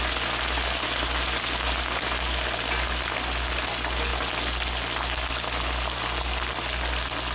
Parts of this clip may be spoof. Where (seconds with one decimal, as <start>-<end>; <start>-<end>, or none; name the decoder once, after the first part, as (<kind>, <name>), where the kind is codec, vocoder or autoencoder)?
none